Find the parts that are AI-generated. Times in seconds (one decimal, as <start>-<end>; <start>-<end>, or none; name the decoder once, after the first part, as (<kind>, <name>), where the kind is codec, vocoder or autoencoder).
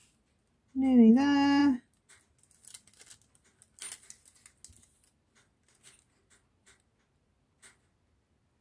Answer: none